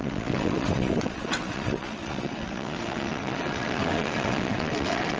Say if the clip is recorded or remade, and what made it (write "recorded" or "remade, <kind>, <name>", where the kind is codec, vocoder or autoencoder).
remade, vocoder, WaveNeXt